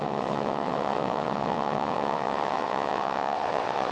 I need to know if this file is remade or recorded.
remade